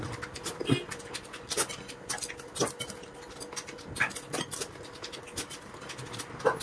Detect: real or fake real